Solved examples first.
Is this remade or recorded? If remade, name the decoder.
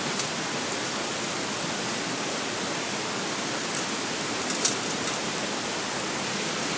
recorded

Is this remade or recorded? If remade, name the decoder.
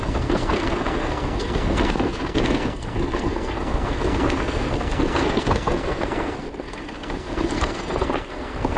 remade, codec, SNAC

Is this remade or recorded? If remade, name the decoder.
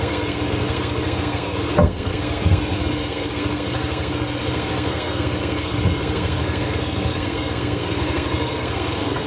remade, codec, SNAC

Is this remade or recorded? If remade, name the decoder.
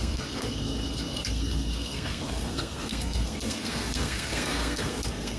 remade, codec, SNAC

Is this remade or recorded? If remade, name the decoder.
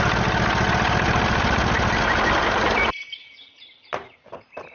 recorded